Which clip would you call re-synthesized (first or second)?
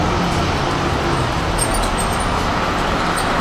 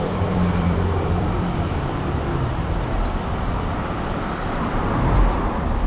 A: second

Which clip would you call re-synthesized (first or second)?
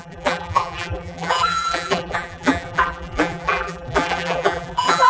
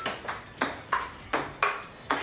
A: first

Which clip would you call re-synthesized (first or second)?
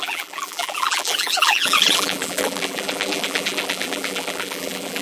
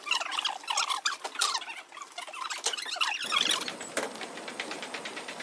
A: first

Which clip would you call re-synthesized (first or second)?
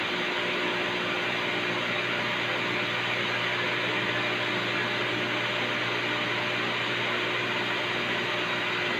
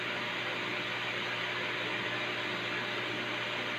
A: second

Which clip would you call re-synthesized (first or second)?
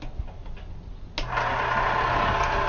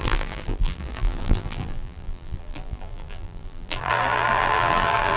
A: second